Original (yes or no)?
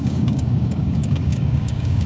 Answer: no